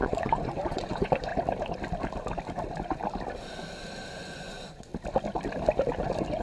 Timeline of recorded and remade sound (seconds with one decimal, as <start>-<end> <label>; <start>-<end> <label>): 0.0-1.3 remade; 1.3-4.1 recorded; 4.1-4.9 remade; 4.9-6.4 recorded